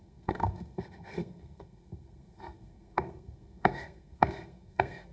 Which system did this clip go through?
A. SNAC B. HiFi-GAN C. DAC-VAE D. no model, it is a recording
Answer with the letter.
A